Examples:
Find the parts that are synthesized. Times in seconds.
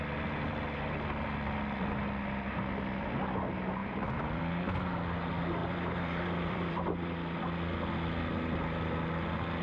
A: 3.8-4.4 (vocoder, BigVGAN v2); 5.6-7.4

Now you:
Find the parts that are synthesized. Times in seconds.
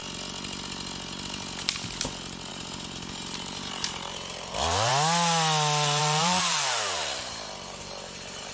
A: 2.5-4.9 (vocoder, BigVGAN v2); 6.0-8.5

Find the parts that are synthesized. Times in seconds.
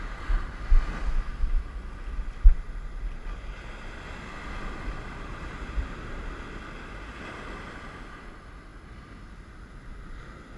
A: 5.3-6.6 (vocoder, BigVGAN v2)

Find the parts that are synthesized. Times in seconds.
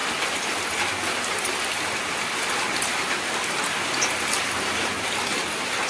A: 4.4-5.2 (vocoder, BigVGAN v2)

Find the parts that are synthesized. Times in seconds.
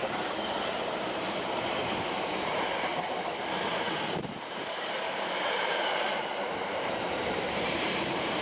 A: 0.0-2.9 (vocoder, BigVGAN v2); 3.7-8.4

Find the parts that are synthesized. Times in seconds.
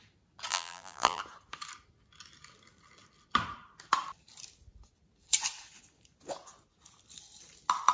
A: 0.5-1.2 (vocoder, BigVGAN v2)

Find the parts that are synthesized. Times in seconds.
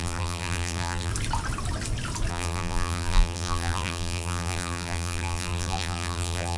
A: 0.0-1.1 (vocoder, BigVGAN v2); 2.3-6.6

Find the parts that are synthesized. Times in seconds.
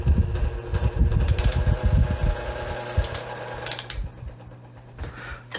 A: 0.7-1.4 (vocoder, BigVGAN v2); 4.0-5.0